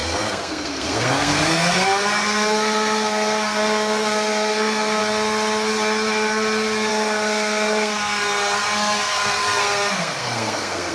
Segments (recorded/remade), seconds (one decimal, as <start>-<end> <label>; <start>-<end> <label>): 0.0-5.0 remade; 5.0-6.9 recorded; 6.9-10.9 remade